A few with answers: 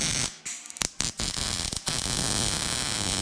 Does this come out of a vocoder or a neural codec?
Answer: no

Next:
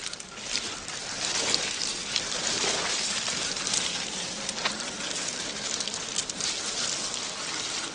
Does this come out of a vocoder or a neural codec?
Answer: yes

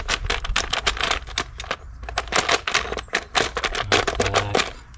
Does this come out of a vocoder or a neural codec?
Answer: no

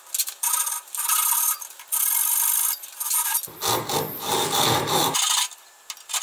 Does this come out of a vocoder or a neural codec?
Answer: no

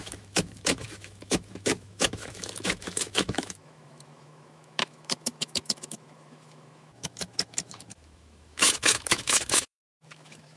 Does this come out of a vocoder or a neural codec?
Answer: yes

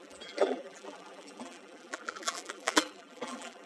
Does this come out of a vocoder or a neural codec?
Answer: yes